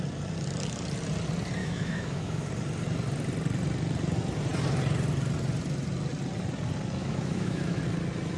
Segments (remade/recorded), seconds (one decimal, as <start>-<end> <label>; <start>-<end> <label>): 0.0-1.6 recorded; 1.6-2.5 remade; 2.5-7.0 recorded; 7.0-7.8 remade; 7.8-8.4 recorded